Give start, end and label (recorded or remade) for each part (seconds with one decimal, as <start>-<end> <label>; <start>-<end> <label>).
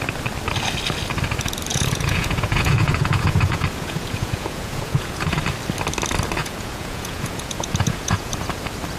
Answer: 0.0-1.7 recorded; 1.7-5.4 remade; 5.4-6.4 recorded; 6.4-8.3 remade; 8.3-9.0 recorded